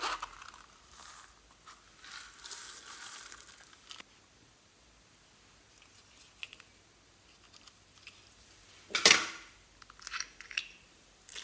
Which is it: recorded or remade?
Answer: recorded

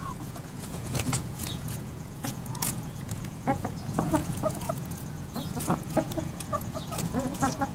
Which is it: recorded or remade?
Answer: remade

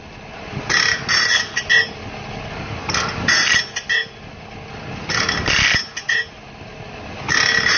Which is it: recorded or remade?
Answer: recorded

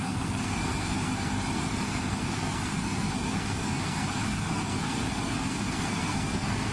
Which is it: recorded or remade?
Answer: remade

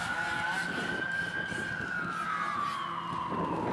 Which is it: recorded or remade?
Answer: recorded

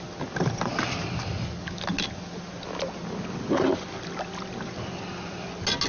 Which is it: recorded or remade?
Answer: recorded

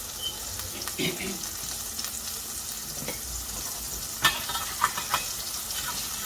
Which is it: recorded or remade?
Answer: recorded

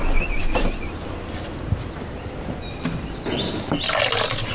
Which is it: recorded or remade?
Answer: recorded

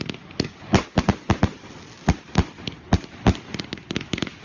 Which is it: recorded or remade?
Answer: recorded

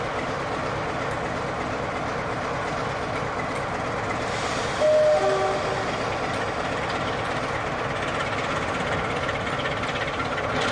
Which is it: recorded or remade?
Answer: recorded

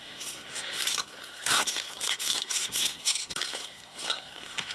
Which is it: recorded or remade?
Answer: remade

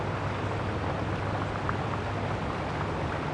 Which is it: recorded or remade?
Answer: recorded